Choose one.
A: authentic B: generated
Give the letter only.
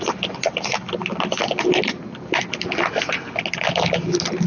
A